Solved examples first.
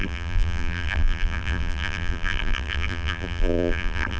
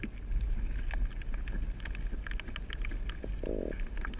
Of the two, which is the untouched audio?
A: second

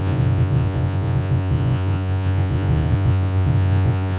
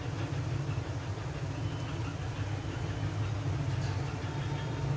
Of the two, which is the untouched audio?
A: second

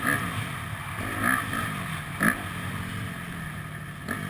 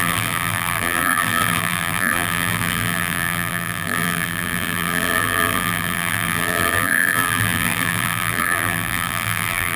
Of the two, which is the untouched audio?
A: first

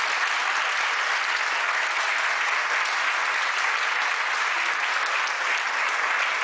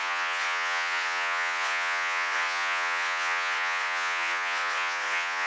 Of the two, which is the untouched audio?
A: first